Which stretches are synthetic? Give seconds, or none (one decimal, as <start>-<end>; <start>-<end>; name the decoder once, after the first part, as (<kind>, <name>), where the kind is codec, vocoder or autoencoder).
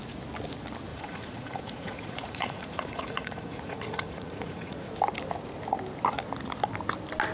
0.9-4.9 (vocoder, Vocos)